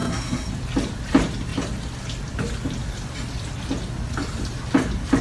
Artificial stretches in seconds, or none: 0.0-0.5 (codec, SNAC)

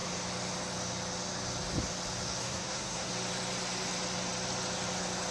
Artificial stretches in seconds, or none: 2.4-3.1 (codec, SNAC)

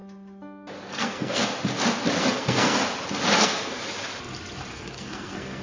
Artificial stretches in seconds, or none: 0.8-1.4 (codec, SNAC); 2.2-2.8; 3.4-3.8; 4.7-5.6